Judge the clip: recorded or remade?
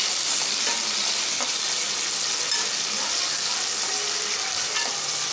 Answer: recorded